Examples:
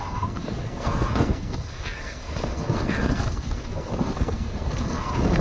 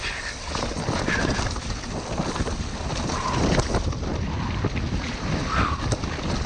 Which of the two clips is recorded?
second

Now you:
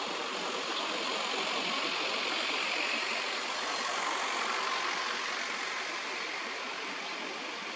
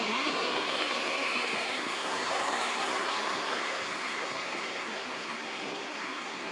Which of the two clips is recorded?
first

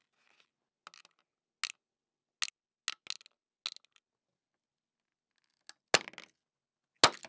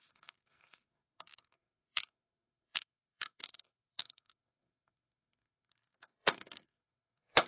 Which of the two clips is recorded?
first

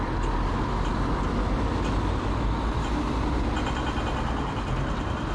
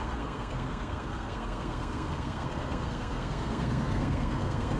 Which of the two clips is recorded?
first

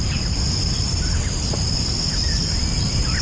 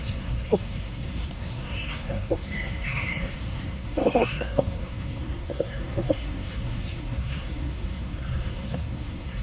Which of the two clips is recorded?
first